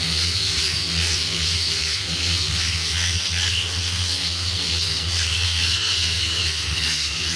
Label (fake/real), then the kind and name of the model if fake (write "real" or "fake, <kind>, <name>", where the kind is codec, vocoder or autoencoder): fake, codec, SNAC